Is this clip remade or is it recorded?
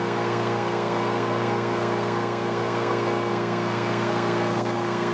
remade